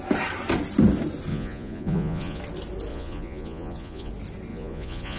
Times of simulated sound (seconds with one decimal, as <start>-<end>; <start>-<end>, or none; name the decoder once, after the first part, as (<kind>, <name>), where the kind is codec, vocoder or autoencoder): 1.3-2.4 (vocoder, Vocos); 2.9-4.1; 4.5-5.2